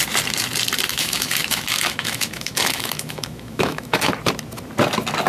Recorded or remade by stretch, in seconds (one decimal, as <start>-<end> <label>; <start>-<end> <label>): 0.0-0.9 recorded; 0.9-4.1 remade; 4.1-5.3 recorded